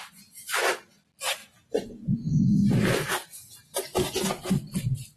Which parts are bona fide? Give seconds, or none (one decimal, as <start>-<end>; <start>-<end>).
0.0-5.2